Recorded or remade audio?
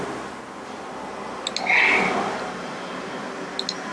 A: recorded